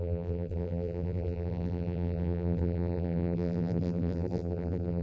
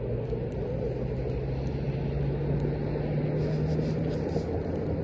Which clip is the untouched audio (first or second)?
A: second